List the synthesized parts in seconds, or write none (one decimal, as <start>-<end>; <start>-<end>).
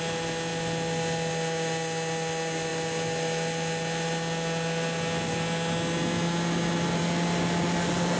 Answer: none